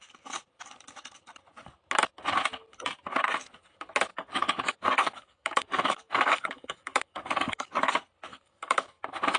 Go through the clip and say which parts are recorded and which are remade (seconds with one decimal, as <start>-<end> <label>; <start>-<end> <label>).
0.0-4.1 recorded; 4.1-7.9 remade; 7.9-8.3 recorded; 8.3-9.0 remade; 9.0-9.4 recorded